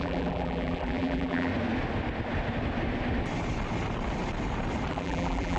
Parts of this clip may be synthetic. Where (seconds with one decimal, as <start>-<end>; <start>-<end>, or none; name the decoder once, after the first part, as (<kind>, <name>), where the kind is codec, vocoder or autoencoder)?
0.0-1.5 (vocoder, BigVGAN v2); 4.9-5.6